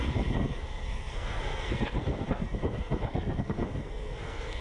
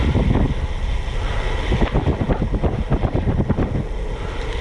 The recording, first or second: second